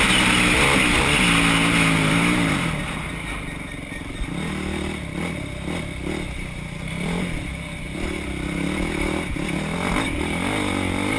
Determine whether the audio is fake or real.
real